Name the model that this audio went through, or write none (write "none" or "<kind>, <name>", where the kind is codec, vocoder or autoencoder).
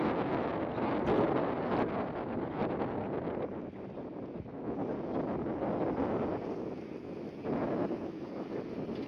none